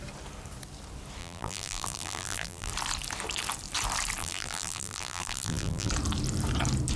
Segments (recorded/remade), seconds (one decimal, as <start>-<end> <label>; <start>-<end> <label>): 0.0-1.2 recorded; 1.2-2.7 remade; 2.7-4.2 recorded; 4.2-5.9 remade; 5.9-7.0 recorded